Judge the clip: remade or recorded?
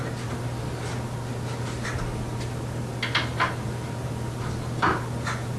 recorded